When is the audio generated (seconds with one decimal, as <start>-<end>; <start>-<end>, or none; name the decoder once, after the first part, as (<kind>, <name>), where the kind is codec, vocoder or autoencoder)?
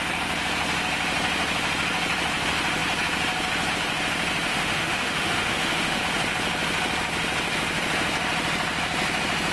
4.5-6.0 (autoencoder, DAC-VAE)